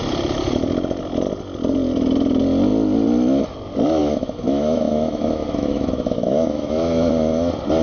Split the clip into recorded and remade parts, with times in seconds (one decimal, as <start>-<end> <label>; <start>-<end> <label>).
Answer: 0.0-4.0 recorded; 4.0-7.1 remade; 7.1-7.8 recorded